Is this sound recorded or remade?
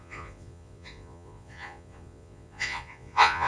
remade